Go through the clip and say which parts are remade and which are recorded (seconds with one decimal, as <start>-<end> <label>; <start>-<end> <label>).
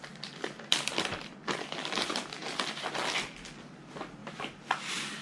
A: 0.0-5.2 remade